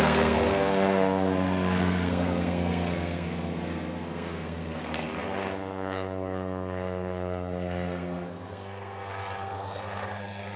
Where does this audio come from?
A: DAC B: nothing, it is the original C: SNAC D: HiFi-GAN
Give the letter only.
C